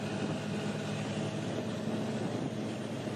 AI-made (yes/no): no